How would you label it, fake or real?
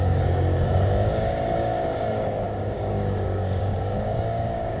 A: fake